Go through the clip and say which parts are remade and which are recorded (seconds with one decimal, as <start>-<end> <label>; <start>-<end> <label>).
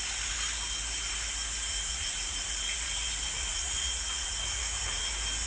0.0-1.7 recorded; 1.7-5.0 remade; 5.0-5.5 recorded